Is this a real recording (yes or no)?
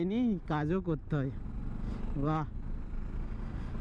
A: yes